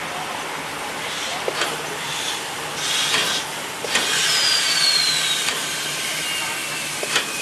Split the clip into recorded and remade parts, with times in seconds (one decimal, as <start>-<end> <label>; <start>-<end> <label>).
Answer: 0.0-1.3 recorded; 1.3-2.8 remade; 2.8-7.4 recorded